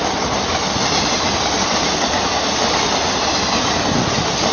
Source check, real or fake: real